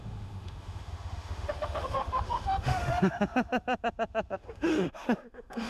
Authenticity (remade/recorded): remade